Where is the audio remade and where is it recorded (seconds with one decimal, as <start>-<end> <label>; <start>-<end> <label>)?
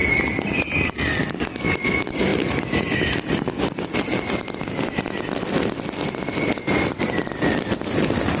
0.0-8.4 recorded